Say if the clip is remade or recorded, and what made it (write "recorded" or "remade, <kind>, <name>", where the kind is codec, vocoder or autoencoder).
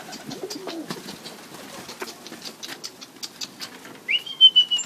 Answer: recorded